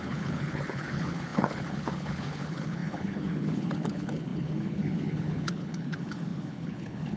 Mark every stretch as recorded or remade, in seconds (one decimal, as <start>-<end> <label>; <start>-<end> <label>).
0.0-7.2 remade